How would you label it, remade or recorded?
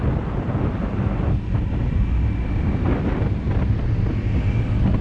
recorded